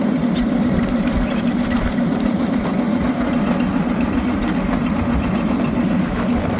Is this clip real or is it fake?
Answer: fake